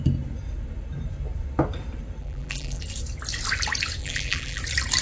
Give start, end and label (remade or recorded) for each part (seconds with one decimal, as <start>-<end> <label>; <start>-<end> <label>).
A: 0.0-2.2 recorded; 2.2-2.8 remade; 2.8-4.0 recorded; 4.0-4.6 remade; 4.6-5.0 recorded